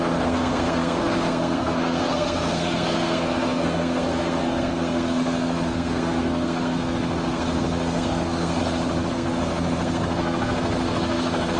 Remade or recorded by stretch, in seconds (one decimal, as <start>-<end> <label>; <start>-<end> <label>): 0.0-8.6 remade; 8.6-9.1 recorded; 9.1-11.6 remade